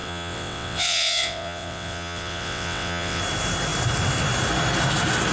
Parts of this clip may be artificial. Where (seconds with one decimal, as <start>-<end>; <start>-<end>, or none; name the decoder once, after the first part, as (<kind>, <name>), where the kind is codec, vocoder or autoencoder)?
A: 0.0-3.2 (vocoder, WaveNeXt)